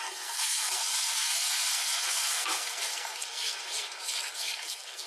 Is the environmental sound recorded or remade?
remade